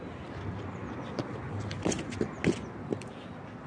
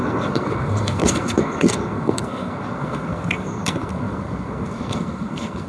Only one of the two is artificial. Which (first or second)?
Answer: second